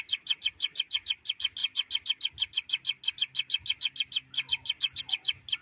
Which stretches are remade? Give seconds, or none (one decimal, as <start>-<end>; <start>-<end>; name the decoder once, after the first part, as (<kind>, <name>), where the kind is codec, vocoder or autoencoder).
none